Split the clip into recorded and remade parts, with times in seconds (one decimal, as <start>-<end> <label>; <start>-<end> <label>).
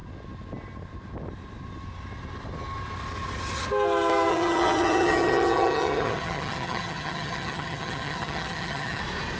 0.0-4.3 recorded; 4.3-9.0 remade; 9.0-9.4 recorded